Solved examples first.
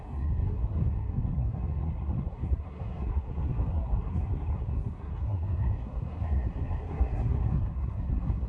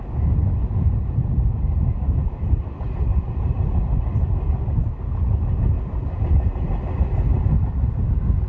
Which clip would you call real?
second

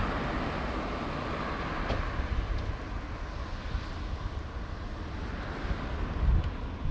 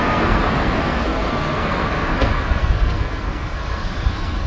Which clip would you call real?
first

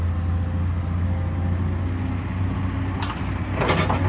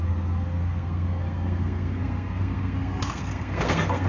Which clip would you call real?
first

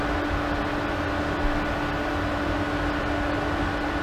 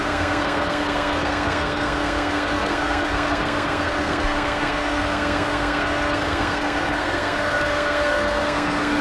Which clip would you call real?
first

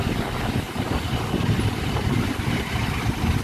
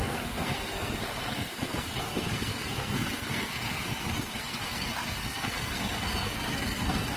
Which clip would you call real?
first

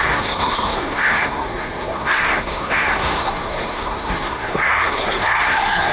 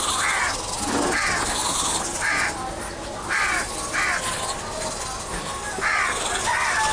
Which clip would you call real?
second